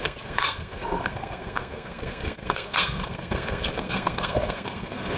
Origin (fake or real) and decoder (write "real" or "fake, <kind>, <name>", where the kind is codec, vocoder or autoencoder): fake, codec, SNAC